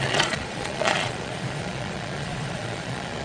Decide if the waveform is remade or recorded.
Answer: remade